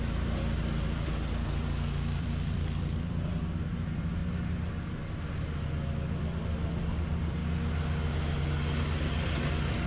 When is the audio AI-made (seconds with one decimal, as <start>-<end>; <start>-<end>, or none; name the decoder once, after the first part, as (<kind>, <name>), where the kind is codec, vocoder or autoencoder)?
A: 0.0-4.2 (vocoder, BigVGAN v2); 6.1-7.4